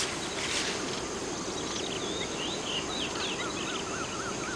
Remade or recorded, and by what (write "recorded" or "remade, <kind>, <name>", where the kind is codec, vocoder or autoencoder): recorded